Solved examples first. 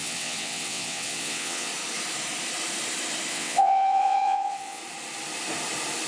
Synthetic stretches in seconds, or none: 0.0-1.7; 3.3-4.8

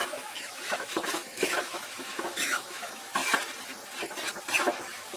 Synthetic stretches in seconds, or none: 0.0-3.2; 4.6-5.2

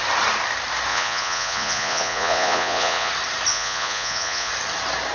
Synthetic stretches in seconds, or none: 0.9-3.1; 3.5-4.5

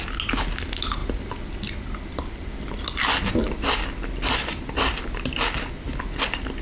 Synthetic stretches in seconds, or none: none

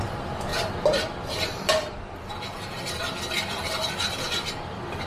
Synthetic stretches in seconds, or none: none

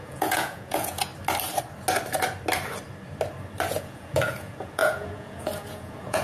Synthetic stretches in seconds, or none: 0.0-1.1; 3.7-6.2